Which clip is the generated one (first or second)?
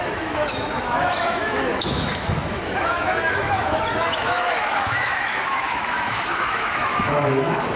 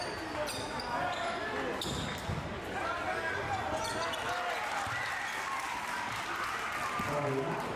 first